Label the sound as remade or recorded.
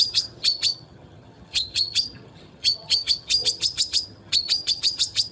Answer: remade